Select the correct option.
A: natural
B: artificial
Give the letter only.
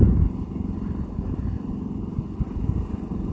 A